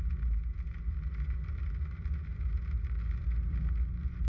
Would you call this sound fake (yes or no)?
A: no